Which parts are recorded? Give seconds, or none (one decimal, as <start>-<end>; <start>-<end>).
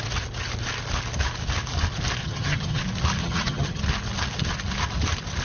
0.0-2.2; 2.8-3.2; 3.8-5.4